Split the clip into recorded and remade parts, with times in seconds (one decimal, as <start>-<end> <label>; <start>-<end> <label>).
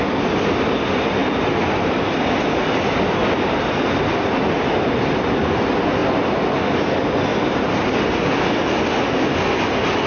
0.0-7.3 recorded; 7.3-8.0 remade; 8.0-10.1 recorded